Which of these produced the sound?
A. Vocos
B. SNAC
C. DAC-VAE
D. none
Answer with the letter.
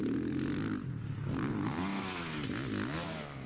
D